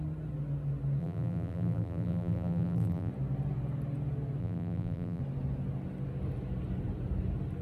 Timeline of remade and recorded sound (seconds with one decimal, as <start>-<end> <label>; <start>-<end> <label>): 0.0-1.0 recorded; 1.0-3.1 remade; 3.1-4.4 recorded; 4.4-5.2 remade; 5.2-7.6 recorded